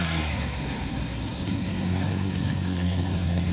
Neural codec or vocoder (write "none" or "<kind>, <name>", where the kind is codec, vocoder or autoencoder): codec, SNAC